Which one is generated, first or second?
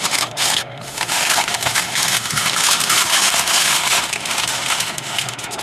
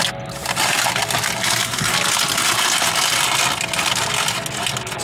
first